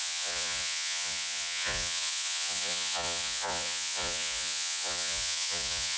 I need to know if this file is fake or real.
fake